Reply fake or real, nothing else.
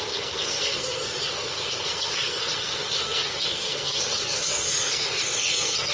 fake